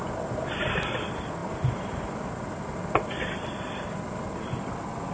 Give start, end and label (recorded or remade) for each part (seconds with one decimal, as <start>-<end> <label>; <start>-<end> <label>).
0.0-5.1 recorded